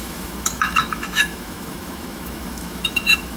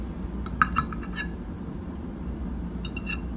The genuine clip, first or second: second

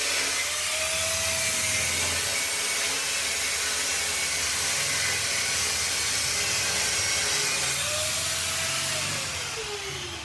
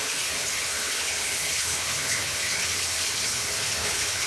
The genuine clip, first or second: first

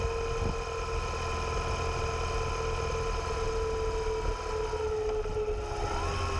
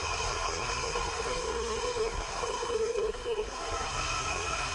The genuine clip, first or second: first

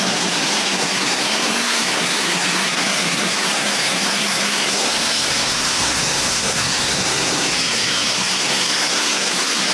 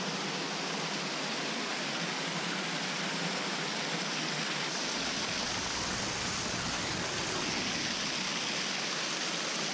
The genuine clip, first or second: second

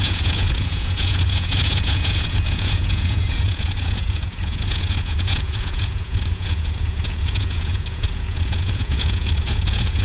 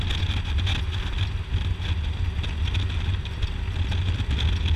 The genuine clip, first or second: second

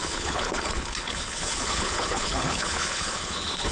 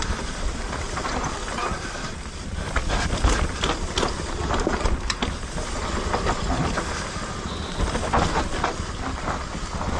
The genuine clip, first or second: second